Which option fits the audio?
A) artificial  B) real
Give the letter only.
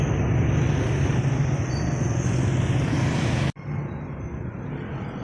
B